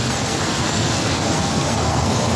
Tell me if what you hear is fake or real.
fake